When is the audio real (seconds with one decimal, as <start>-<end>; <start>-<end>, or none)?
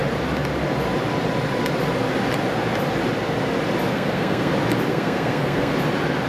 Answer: 0.0-3.9; 4.5-4.9; 5.7-6.3